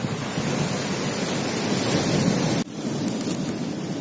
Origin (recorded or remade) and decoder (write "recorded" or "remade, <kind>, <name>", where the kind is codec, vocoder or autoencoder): recorded